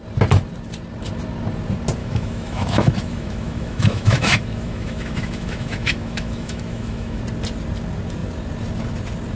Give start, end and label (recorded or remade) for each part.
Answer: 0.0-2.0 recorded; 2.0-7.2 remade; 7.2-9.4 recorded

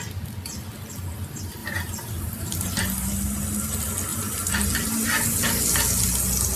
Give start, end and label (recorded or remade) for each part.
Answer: 0.0-1.6 recorded; 1.6-2.8 remade; 2.8-4.1 recorded; 4.1-5.4 remade; 5.4-6.6 recorded

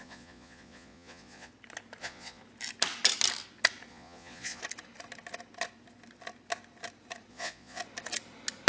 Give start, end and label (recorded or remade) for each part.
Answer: 0.0-1.5 remade; 1.5-2.0 recorded; 2.0-2.4 remade; 2.4-3.9 recorded; 3.9-4.6 remade; 4.6-7.3 recorded; 7.3-7.8 remade; 7.8-8.7 recorded